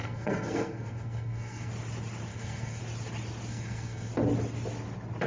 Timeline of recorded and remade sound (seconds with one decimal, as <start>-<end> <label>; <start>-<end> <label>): 0.0-1.7 remade; 1.7-2.3 recorded; 2.3-2.8 remade; 2.8-3.5 recorded; 3.5-4.1 remade; 4.1-5.3 recorded